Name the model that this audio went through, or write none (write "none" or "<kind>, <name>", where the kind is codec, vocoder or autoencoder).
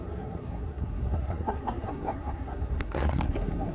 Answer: codec, SNAC